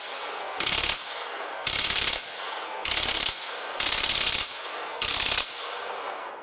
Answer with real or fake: fake